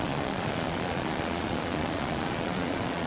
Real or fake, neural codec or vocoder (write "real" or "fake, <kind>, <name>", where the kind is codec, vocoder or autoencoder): fake, vocoder, Vocos